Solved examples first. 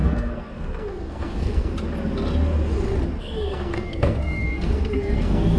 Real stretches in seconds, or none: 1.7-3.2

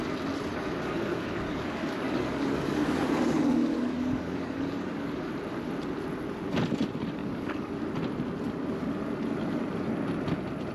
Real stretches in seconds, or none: 0.0-0.5; 5.3-7.2; 7.7-10.7

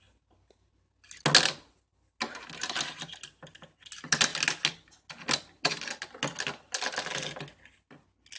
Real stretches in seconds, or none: 0.0-8.4

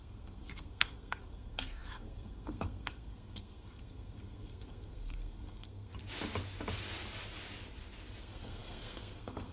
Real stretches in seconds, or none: 5.9-8.2

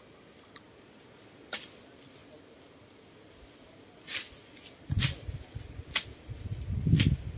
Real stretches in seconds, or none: 0.0-7.4